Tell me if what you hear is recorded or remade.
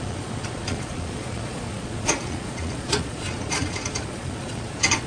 remade